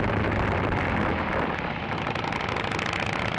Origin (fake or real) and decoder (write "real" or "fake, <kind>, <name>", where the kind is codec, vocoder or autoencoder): real